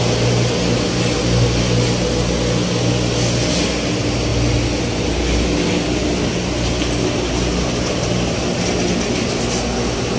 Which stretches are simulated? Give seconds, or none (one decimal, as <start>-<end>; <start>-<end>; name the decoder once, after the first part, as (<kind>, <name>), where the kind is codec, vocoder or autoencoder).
none